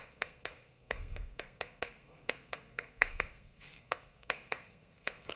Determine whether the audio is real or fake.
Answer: fake